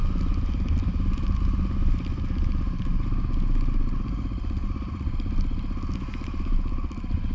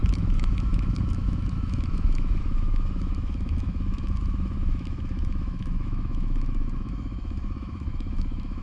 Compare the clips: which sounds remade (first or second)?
second